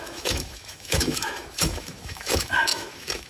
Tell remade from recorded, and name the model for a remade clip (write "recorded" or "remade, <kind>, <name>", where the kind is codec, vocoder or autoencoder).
remade, autoencoder, DAC-VAE